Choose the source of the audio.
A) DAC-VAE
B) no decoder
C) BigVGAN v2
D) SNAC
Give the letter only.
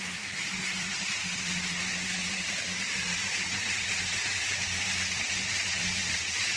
C